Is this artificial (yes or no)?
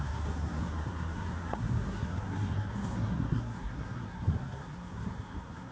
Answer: yes